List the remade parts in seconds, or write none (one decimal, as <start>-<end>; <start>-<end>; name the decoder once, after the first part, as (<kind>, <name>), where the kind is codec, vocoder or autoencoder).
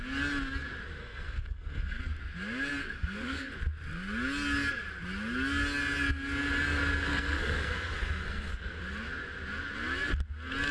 1.0-2.0 (codec, SNAC); 2.8-3.5; 7.1-8.8